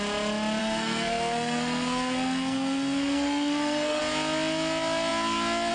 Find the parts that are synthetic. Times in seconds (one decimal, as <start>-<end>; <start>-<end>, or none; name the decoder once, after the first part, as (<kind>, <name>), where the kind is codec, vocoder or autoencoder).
0.6-4.0 (codec, SNAC)